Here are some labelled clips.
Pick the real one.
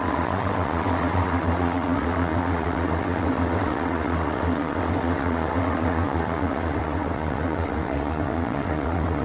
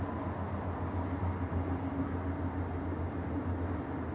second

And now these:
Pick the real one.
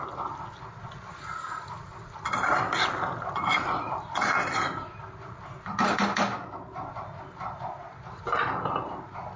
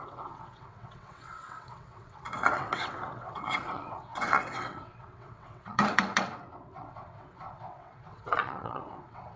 first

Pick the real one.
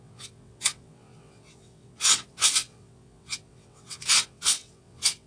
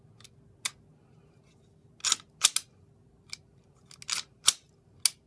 second